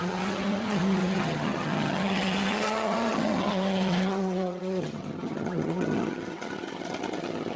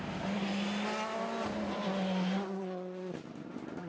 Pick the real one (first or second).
second